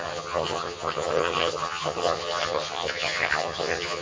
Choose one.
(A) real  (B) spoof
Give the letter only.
B